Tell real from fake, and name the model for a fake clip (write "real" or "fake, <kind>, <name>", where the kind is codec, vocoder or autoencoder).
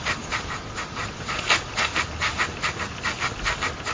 real